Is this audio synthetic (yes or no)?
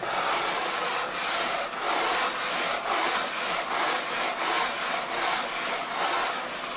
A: no